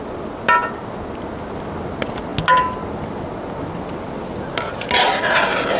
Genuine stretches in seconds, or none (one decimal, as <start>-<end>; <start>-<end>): 0.0-5.8

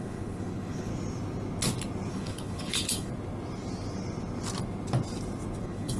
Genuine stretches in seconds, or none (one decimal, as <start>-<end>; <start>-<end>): 0.9-2.1; 3.1-5.6

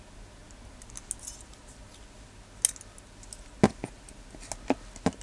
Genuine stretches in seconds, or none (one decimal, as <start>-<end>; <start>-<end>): 0.0-5.2